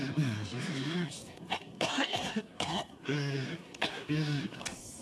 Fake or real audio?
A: fake